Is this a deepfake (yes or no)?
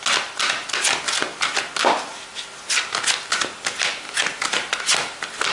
no